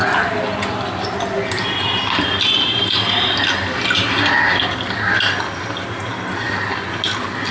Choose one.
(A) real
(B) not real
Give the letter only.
A